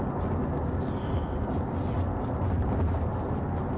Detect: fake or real real